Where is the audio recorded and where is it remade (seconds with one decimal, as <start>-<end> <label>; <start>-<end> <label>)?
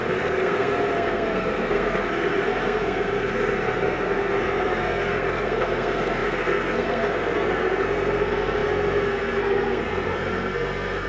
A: 0.0-11.1 remade